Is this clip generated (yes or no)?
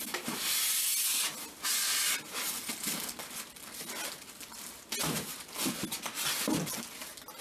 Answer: no